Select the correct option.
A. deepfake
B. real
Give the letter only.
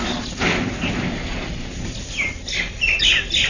B